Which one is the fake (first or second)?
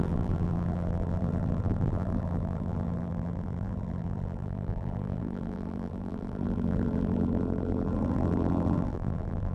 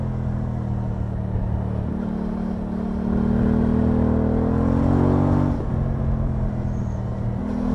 first